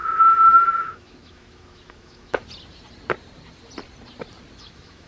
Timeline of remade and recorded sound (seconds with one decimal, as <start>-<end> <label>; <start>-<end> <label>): 0.0-2.4 remade; 2.4-4.6 recorded; 4.6-5.1 remade